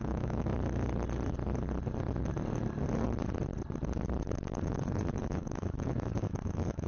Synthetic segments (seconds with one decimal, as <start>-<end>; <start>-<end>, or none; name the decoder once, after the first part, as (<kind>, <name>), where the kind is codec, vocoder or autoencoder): 0.0-0.5 (autoencoder, DAC-VAE); 4.2-6.9